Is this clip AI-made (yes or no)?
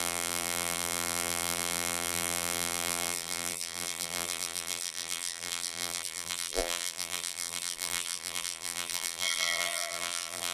yes